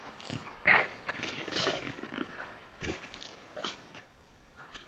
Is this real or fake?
fake